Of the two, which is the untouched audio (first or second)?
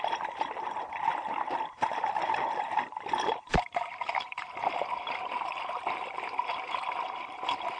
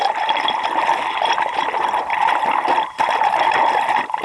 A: second